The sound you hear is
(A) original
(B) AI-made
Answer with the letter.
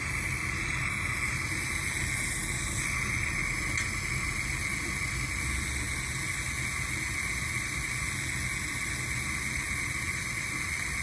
A